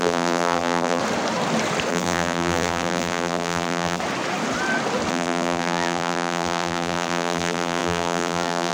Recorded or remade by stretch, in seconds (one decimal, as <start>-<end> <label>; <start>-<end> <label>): 0.0-1.0 remade; 1.0-1.9 recorded; 1.9-4.0 remade; 4.0-5.1 recorded; 5.1-8.7 remade